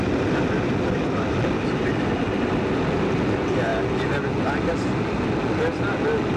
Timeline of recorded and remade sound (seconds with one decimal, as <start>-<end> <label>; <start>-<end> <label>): 0.0-3.7 remade; 3.7-4.9 recorded; 4.9-6.4 remade